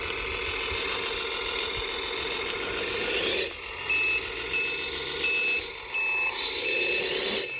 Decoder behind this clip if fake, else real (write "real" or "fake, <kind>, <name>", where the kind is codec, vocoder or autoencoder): real